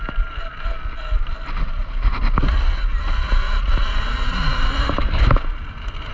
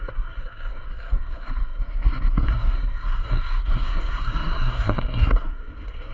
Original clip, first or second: first